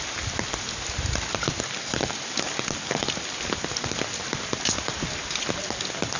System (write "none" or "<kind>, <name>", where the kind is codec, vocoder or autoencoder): none